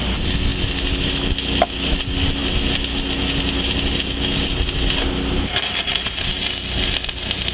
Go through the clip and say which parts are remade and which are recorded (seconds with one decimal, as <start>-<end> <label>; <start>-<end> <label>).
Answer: 0.0-7.5 recorded